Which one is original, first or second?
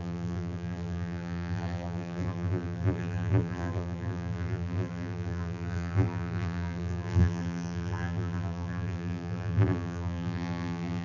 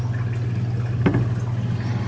second